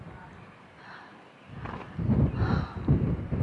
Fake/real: real